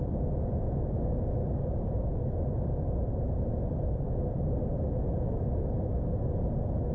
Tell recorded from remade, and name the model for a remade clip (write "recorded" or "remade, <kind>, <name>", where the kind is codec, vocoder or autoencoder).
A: recorded